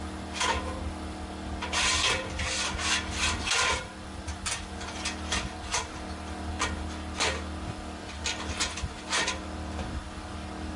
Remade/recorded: recorded